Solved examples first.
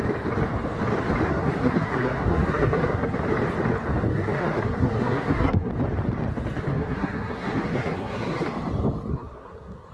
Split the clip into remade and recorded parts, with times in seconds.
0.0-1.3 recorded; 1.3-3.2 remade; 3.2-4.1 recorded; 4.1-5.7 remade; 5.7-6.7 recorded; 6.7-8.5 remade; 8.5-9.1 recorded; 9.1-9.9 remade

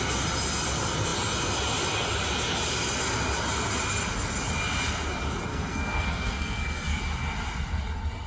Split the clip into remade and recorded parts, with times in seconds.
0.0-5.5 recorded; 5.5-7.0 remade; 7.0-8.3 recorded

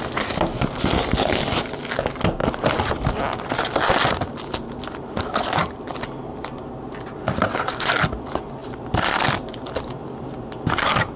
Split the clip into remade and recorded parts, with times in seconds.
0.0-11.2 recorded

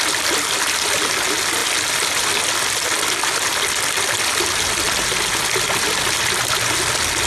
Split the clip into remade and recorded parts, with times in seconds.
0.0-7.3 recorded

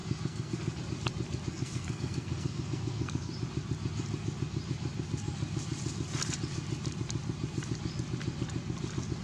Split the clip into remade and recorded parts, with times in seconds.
0.0-0.8 remade; 0.8-1.5 recorded; 1.5-3.3 remade; 3.3-9.2 recorded

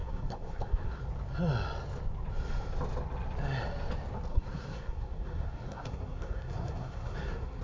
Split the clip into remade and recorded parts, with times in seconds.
0.0-1.0 remade; 1.0-4.3 recorded; 4.3-7.6 remade